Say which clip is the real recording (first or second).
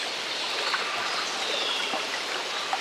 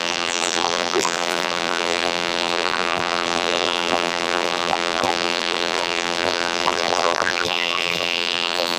first